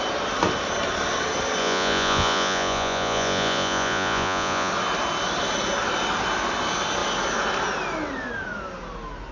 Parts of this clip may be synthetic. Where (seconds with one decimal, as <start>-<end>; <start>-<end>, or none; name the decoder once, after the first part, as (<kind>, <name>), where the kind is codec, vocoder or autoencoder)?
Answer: 1.6-4.7 (vocoder, Vocos)